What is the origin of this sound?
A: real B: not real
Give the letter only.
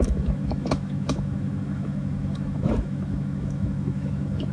B